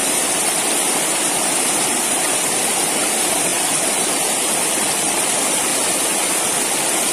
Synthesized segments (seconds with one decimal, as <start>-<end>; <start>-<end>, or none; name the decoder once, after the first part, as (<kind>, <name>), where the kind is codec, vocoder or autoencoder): 0.0-5.7 (vocoder, BigVGAN v2)